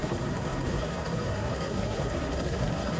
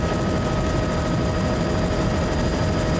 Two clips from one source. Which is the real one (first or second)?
second